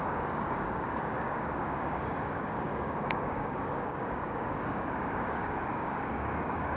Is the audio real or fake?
fake